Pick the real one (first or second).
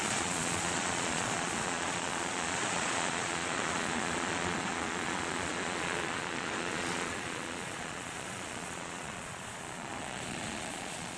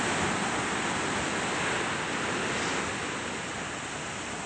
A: second